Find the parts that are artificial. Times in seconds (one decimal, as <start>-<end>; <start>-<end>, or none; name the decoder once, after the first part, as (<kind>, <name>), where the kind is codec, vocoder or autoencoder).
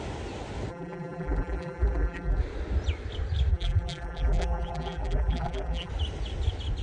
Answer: 0.7-2.4 (vocoder, BigVGAN v2); 3.5-5.9